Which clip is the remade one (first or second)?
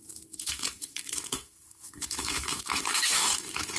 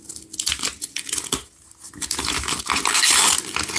first